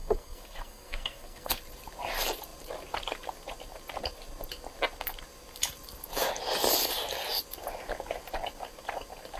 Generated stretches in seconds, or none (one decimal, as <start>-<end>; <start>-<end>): 0.0-1.6